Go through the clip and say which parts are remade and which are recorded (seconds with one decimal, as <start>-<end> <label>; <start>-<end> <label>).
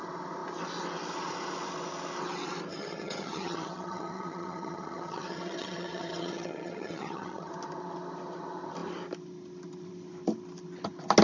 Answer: 0.0-2.7 recorded; 2.7-7.5 remade; 7.5-11.2 recorded